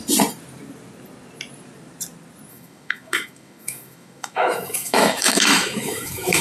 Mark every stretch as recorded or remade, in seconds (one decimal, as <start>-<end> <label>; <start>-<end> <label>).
0.0-2.5 recorded; 2.5-6.4 remade